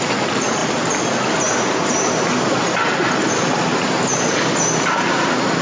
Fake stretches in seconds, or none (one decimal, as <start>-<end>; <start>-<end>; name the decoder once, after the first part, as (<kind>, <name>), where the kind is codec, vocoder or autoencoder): none